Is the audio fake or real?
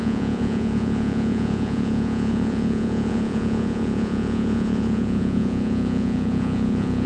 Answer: fake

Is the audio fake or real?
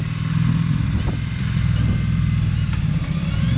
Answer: real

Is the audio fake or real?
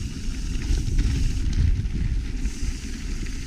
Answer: real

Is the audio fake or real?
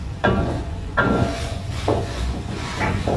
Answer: fake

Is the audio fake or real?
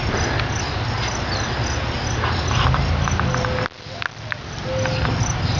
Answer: real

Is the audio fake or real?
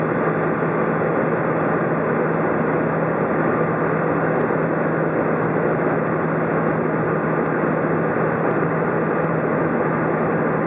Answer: real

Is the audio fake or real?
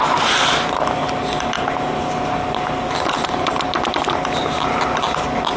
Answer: real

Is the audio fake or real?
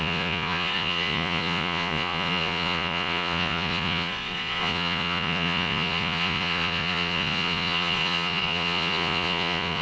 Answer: fake